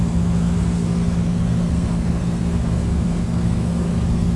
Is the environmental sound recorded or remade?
remade